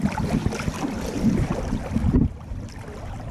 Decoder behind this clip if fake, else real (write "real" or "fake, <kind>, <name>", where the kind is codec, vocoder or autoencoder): real